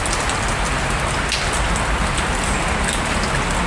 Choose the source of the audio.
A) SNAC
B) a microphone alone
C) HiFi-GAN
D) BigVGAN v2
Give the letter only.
B